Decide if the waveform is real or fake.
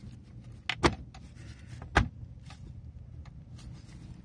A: real